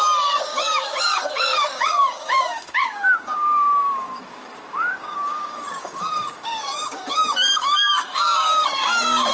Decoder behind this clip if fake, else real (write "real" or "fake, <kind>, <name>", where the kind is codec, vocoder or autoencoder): fake, codec, DAC